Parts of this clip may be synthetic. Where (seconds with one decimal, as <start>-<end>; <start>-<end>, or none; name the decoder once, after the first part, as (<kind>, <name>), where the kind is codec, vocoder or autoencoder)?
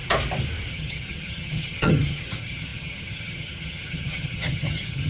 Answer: 0.7-5.1 (vocoder, HiFi-GAN)